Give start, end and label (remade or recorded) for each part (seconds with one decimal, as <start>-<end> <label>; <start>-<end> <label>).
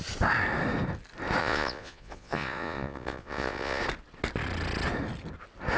0.0-1.4 recorded; 1.4-3.8 remade; 3.8-5.8 recorded